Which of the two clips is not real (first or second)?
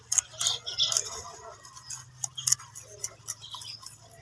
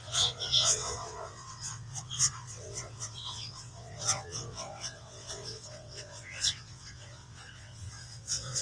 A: second